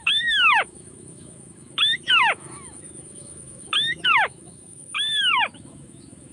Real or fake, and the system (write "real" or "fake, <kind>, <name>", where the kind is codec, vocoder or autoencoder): fake, autoencoder, DAC-VAE